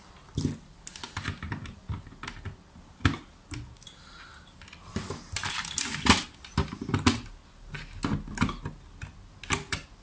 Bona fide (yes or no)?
yes